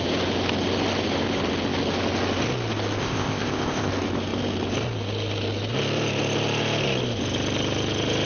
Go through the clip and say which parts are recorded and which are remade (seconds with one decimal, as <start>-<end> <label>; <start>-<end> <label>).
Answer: 0.0-3.0 recorded; 3.0-3.9 remade; 3.9-8.3 recorded